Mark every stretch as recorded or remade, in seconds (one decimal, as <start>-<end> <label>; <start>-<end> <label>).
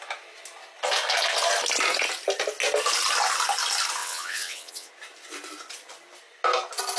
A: 0.0-4.0 recorded; 4.0-4.9 remade; 4.9-7.0 recorded